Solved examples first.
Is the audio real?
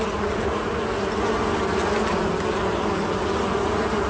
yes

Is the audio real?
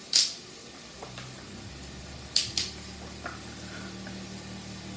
yes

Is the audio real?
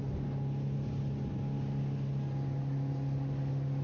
yes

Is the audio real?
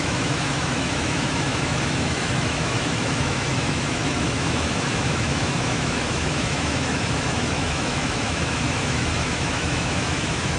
no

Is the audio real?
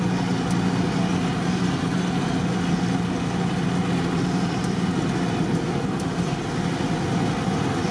yes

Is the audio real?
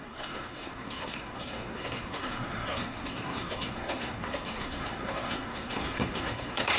no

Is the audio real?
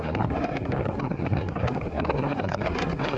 no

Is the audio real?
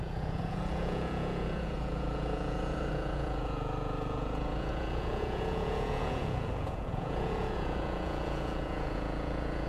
no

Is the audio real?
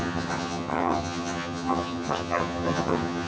no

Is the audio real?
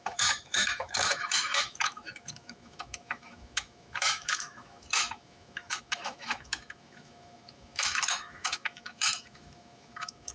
no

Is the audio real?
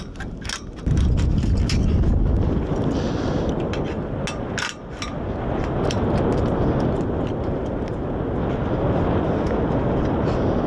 yes